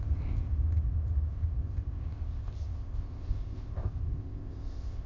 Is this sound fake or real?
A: fake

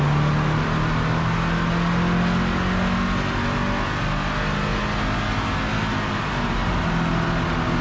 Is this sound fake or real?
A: real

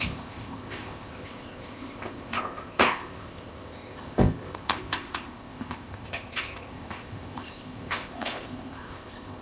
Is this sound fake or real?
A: fake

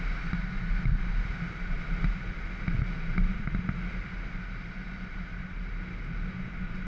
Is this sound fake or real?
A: real